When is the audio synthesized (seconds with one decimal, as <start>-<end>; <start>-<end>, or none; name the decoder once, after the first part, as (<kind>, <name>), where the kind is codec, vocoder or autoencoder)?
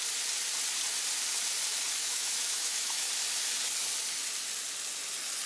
2.0-3.1 (autoencoder, DAC-VAE)